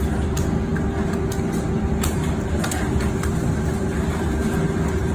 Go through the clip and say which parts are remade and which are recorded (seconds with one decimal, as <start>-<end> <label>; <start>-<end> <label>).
0.0-5.1 recorded